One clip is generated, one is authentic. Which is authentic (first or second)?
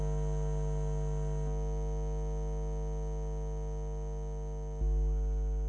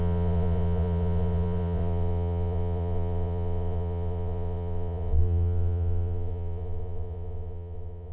first